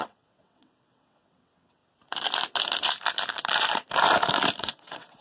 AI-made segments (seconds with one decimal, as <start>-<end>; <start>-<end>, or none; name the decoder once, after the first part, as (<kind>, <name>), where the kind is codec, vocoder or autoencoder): 0.0-1.8 (vocoder, WaveNeXt); 4.6-5.2